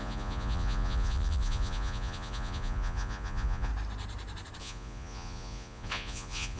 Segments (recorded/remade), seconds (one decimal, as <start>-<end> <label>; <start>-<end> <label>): 0.0-3.7 remade; 3.7-4.6 recorded; 4.6-6.6 remade